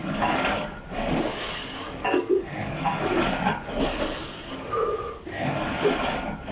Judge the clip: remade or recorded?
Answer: remade